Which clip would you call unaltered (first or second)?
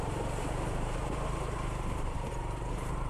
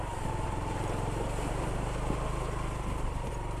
second